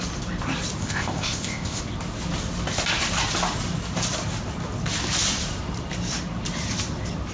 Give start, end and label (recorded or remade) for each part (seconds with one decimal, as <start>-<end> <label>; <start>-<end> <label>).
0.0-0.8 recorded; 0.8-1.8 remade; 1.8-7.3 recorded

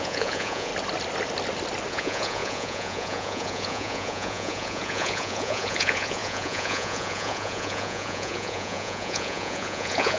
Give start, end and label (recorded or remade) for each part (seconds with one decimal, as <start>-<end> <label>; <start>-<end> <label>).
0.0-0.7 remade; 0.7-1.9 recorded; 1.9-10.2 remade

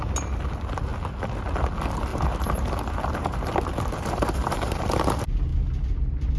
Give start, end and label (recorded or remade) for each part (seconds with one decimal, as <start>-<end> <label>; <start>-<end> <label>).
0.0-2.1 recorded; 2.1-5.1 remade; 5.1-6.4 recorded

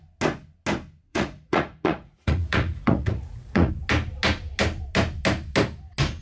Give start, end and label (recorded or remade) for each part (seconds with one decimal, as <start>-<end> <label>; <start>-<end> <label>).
0.0-1.1 recorded; 1.1-3.7 remade; 3.7-6.2 recorded